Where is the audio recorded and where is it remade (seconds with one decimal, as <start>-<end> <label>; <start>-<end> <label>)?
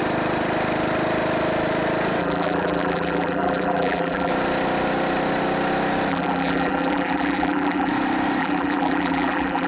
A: 0.0-2.2 recorded; 2.2-4.3 remade; 4.3-6.1 recorded; 6.1-7.9 remade; 7.9-8.4 recorded; 8.4-9.7 remade